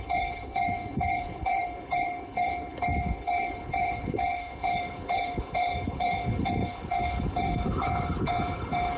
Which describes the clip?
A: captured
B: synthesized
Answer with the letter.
B